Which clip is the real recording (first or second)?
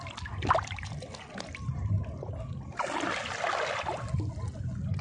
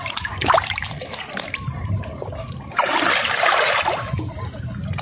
first